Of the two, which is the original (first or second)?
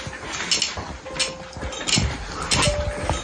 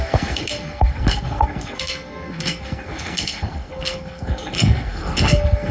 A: first